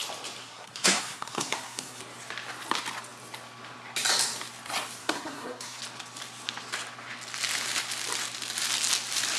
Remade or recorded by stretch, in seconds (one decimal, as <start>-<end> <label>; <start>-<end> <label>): 0.0-0.4 recorded; 0.4-2.0 remade; 2.0-5.0 recorded; 5.0-5.8 remade; 5.8-9.4 recorded